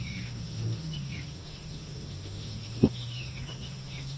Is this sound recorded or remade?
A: remade